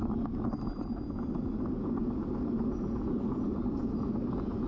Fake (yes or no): no